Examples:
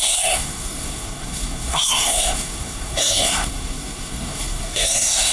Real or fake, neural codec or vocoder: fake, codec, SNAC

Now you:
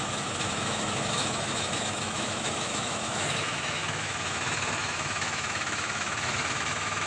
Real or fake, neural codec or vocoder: fake, autoencoder, DAC-VAE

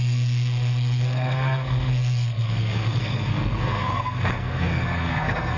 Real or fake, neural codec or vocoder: fake, codec, SNAC